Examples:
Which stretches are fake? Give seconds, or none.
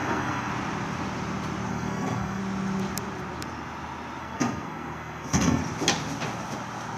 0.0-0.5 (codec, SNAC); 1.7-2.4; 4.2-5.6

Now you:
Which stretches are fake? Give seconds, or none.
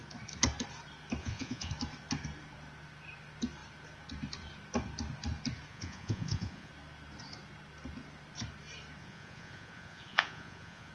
1.2-1.7 (vocoder, Vocos); 5.7-6.7; 9.0-10.9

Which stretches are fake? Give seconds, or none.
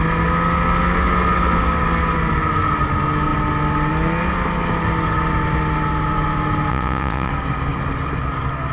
6.7-7.3 (vocoder, Vocos)